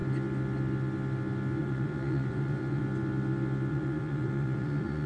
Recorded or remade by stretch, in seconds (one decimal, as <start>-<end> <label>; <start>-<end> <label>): 0.0-1.6 recorded; 1.6-2.8 remade; 2.8-3.7 recorded; 3.7-5.1 remade